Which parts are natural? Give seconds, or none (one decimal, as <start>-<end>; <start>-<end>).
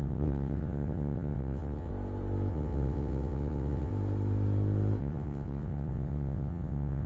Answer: 1.9-2.5; 3.9-5.0